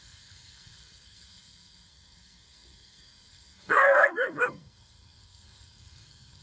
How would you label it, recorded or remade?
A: remade